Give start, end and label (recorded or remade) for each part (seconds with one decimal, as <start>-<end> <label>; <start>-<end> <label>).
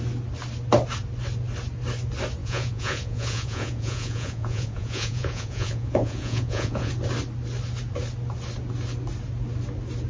0.0-2.4 recorded; 2.4-6.9 remade; 6.9-10.1 recorded